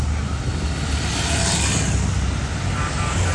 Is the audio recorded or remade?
recorded